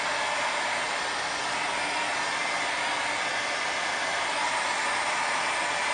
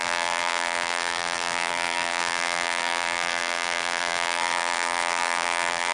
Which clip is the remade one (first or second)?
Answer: second